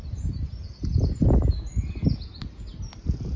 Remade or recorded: recorded